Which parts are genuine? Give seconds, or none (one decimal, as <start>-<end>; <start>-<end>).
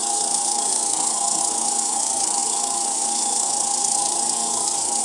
none